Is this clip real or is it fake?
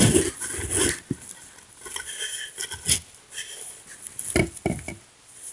real